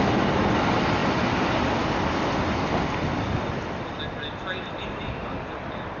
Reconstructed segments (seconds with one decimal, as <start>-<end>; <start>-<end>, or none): none